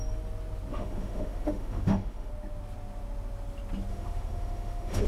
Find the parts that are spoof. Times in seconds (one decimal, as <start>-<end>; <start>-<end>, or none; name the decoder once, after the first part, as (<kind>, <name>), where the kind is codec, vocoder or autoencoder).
0.7-2.3 (autoencoder, DAC-VAE); 3.9-5.1

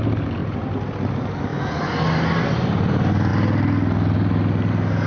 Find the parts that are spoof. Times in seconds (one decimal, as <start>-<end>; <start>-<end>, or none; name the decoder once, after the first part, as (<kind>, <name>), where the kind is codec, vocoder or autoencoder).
none

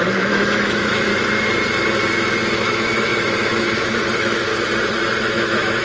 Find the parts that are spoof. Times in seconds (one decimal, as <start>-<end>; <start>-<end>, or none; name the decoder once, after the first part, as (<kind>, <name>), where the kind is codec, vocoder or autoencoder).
0.0-1.1 (autoencoder, DAC-VAE); 2.5-4.5; 5.2-5.8

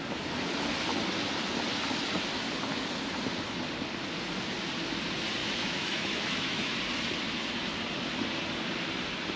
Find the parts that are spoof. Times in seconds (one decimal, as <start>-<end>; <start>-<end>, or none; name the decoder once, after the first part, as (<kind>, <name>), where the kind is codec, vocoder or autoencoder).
5.4-6.7 (autoencoder, DAC-VAE)

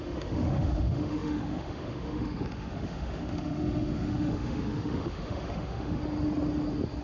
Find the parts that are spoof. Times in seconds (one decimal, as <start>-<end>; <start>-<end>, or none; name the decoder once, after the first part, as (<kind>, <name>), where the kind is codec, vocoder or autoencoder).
0.0-6.0 (autoencoder, DAC-VAE)